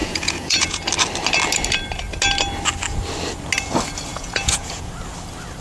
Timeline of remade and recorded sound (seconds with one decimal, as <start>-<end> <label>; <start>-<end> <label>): 0.0-0.8 remade; 0.8-4.1 recorded; 4.1-4.9 remade; 4.9-5.6 recorded

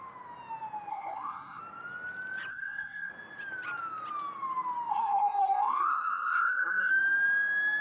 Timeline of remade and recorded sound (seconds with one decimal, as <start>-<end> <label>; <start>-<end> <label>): 0.0-0.9 recorded; 0.9-1.6 remade; 1.6-2.5 recorded; 2.5-3.1 remade; 3.1-4.9 recorded; 4.9-6.9 remade; 6.9-7.8 recorded

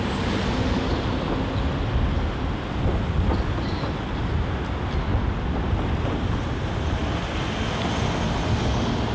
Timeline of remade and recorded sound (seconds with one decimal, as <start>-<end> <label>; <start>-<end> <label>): 0.0-9.1 recorded